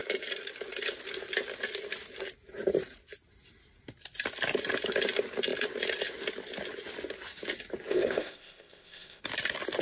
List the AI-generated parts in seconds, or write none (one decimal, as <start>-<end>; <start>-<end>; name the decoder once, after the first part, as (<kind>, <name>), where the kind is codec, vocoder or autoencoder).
7.9-9.2 (codec, ZipCodec)